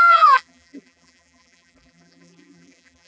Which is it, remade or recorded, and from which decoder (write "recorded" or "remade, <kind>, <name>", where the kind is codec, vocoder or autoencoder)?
remade, vocoder, BigVGAN v2